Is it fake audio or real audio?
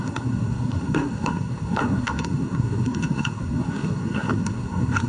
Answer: fake